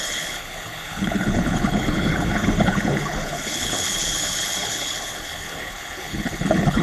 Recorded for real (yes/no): no